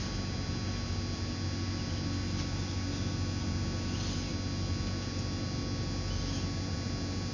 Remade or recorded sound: recorded